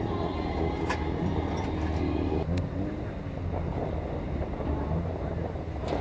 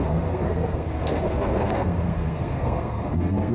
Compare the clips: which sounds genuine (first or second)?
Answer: first